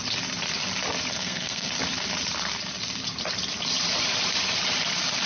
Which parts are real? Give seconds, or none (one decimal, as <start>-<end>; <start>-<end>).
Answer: 0.0-1.1; 1.7-5.3